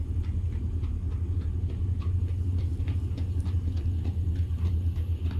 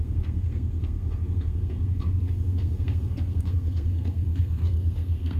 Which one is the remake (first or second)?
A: second